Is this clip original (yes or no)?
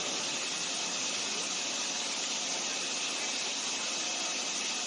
yes